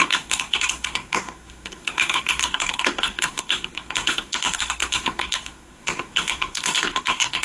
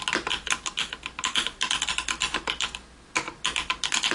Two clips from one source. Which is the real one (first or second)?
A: second